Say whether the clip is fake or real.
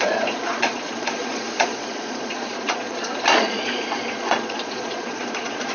fake